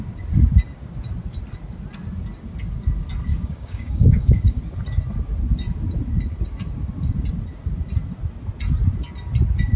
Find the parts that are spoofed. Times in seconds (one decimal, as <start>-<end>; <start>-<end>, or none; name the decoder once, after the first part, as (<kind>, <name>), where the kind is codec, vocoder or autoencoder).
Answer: 3.3-4.6 (codec, DAC)